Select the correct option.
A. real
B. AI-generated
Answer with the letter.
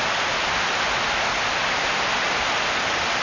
A